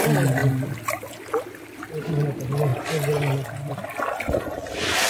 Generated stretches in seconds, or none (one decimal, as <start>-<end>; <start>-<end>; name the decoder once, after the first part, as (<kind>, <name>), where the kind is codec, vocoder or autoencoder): none